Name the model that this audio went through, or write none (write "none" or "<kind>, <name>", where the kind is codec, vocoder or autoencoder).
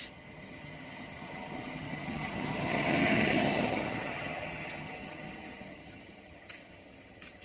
vocoder, HiFi-GAN